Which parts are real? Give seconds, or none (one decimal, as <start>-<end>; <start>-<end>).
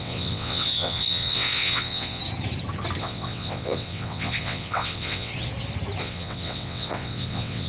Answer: 2.2-3.0; 5.3-6.0